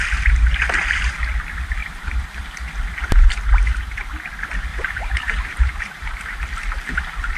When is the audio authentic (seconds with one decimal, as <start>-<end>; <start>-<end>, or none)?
0.0-1.8; 2.3-4.7; 6.4-7.4